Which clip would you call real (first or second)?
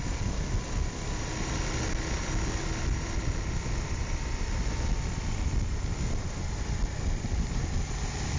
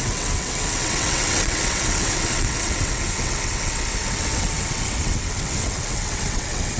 first